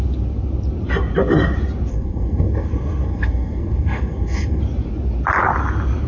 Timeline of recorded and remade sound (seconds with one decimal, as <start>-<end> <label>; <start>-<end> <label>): 0.0-1.9 recorded; 1.9-4.6 remade; 4.6-6.1 recorded